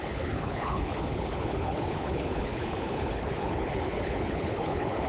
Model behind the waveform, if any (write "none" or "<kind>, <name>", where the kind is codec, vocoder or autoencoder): codec, HILCodec